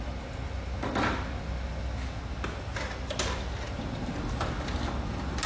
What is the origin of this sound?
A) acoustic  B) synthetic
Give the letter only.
A